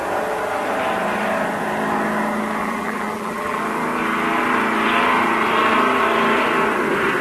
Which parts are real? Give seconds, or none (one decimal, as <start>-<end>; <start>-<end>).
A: 0.0-2.6; 3.6-7.2